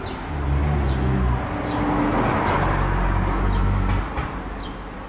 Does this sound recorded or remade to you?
recorded